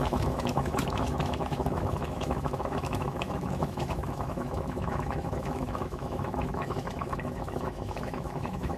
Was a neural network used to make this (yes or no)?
yes